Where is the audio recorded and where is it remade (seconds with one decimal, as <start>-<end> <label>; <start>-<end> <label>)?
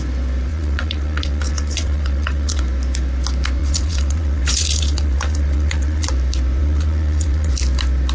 0.0-0.5 recorded; 0.5-2.6 remade; 2.6-3.6 recorded; 3.6-6.1 remade; 6.1-6.6 recorded; 6.6-7.5 remade; 7.5-8.1 recorded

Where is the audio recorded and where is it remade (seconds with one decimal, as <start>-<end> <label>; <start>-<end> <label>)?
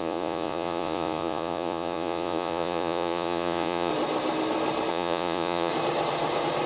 0.0-3.9 remade; 3.9-4.9 recorded; 4.9-5.7 remade; 5.7-6.7 recorded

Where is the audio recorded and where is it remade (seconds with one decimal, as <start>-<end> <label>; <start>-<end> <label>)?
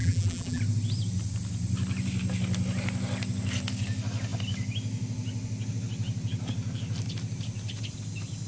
0.0-0.6 remade; 0.6-8.5 recorded